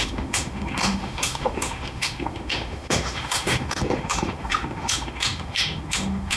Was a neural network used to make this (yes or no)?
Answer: yes